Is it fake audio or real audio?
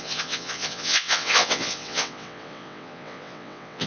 fake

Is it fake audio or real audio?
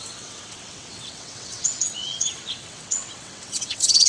fake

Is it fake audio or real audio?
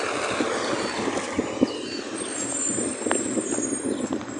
real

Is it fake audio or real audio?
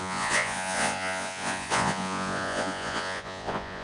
fake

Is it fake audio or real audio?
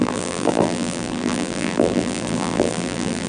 fake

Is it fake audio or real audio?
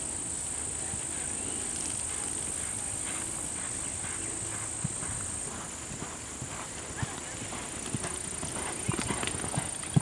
real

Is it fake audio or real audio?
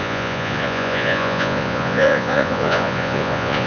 fake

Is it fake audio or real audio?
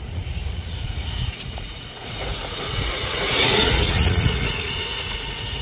fake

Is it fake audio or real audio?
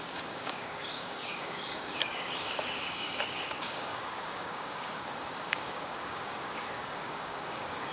fake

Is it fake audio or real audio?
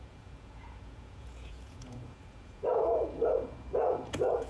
fake